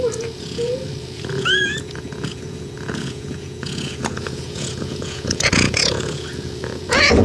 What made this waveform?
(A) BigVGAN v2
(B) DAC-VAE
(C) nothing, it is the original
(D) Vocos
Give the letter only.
D